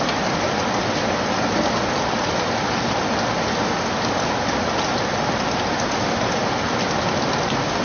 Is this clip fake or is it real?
real